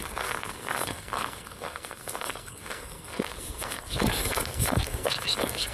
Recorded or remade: remade